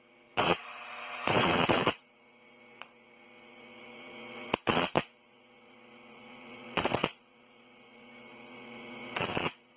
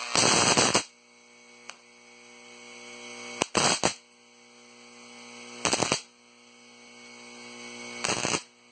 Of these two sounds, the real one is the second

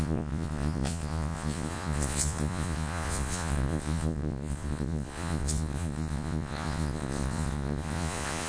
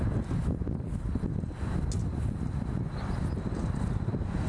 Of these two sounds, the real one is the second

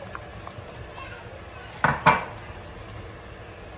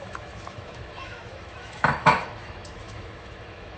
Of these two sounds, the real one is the first